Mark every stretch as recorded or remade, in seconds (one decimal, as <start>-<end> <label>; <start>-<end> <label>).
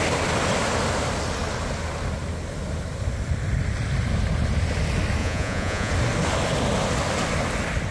0.0-5.2 recorded; 5.2-5.9 remade; 5.9-7.9 recorded